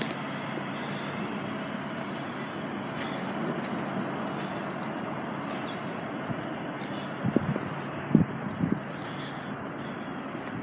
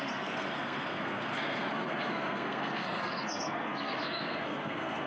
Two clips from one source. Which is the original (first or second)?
first